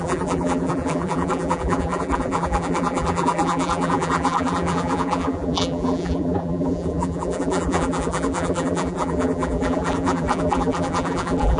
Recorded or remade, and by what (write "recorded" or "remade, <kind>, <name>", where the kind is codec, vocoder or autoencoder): remade, vocoder, BigVGAN v2